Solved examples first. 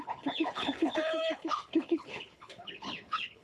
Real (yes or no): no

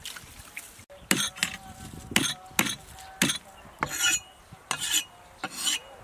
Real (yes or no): yes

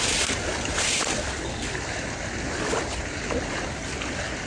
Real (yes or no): yes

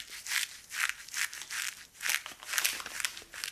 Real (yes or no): yes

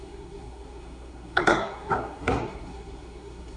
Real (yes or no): no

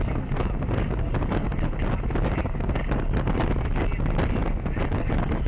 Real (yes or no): yes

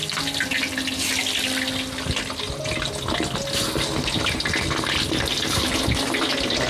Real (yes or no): yes